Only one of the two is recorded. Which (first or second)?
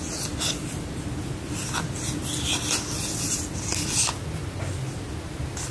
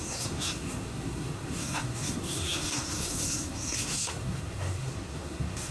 first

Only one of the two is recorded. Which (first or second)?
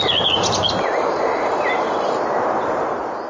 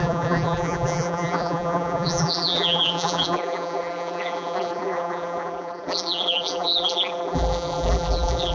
first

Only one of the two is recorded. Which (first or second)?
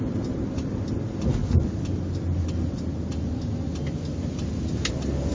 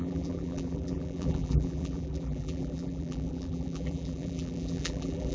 first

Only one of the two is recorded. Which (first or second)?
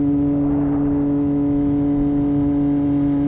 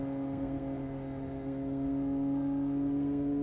first